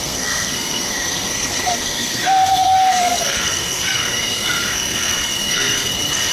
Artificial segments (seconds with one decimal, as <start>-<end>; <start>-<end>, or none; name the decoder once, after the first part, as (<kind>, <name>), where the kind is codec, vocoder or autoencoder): 0.0-6.3 (codec, SNAC)